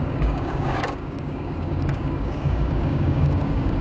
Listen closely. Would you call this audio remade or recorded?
remade